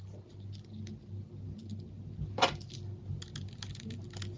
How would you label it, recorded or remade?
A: recorded